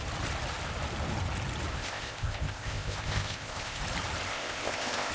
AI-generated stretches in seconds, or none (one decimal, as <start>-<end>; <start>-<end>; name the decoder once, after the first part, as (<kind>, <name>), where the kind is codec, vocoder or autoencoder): 1.7-3.8 (codec, ZipCodec); 4.3-5.1